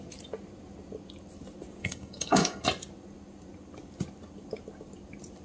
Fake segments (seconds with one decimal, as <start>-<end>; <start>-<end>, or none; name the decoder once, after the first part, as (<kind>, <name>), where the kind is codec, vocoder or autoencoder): 1.8-2.6 (codec, DAC)